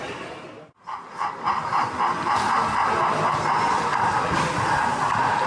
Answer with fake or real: real